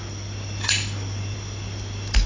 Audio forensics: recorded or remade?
recorded